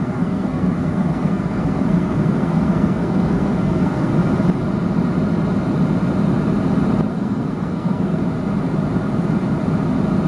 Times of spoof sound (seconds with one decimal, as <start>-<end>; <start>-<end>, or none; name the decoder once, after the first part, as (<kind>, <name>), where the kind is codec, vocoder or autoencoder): 0.0-4.1 (codec, SNAC); 7.1-8.2